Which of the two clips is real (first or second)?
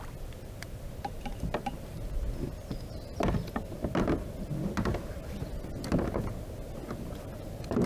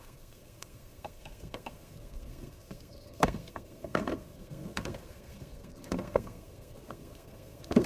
first